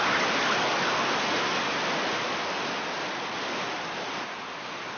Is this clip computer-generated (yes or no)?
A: no